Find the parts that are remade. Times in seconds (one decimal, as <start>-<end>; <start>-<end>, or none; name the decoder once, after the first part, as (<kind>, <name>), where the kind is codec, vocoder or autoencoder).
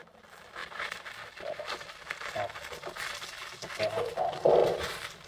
4.6-5.3 (vocoder, BigVGAN v2)